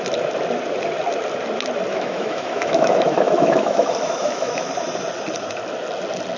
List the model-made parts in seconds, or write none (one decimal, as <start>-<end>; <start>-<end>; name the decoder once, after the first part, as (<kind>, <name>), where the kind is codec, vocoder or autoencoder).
1.9-4.7 (autoencoder, DAC-VAE)